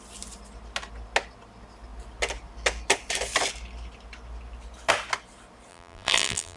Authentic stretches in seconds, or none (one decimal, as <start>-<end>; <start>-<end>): 0.0-5.7